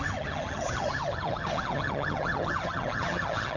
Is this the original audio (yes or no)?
no